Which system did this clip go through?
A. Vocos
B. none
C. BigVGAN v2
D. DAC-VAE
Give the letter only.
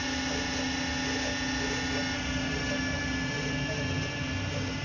B